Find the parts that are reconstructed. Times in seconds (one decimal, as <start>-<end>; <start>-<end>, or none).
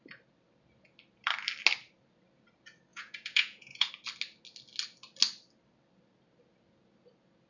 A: 2.9-3.9